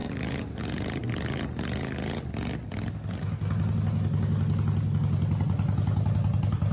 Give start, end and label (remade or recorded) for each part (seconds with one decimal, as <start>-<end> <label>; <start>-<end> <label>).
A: 0.0-0.6 remade; 0.6-6.7 recorded